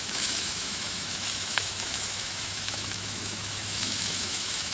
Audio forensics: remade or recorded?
remade